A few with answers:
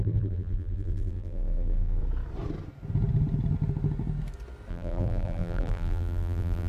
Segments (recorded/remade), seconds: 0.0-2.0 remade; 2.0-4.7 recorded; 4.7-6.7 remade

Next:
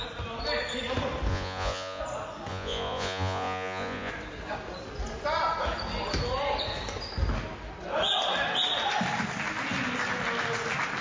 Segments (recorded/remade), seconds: 0.0-1.3 recorded; 1.3-2.0 remade; 2.0-2.5 recorded; 2.5-4.1 remade; 4.1-11.0 recorded

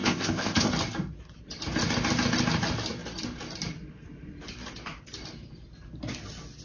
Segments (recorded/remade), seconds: 0.0-0.7 remade; 0.7-6.6 recorded

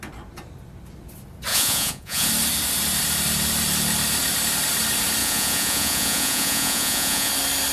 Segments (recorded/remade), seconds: 0.0-1.5 recorded; 1.5-2.3 remade; 2.3-5.2 recorded; 5.2-7.3 remade; 7.3-7.7 recorded

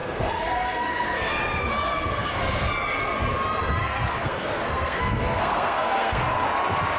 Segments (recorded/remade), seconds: 0.0-1.3 remade; 1.3-1.9 recorded; 1.9-2.7 remade; 2.7-3.8 recorded; 3.8-6.2 remade; 6.2-7.0 recorded

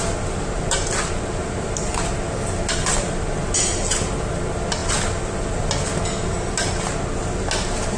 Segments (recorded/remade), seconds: 0.0-8.0 recorded

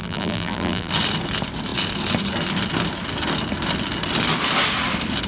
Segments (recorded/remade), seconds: 0.0-0.9 remade; 0.9-5.3 recorded

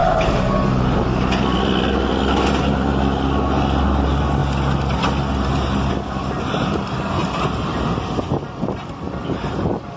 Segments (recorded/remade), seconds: 0.0-10.0 recorded